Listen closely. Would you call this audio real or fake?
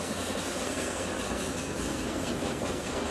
fake